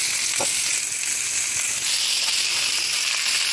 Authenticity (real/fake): real